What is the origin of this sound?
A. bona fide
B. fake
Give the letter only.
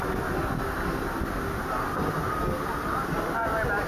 A